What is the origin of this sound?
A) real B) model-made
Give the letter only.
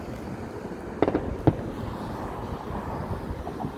A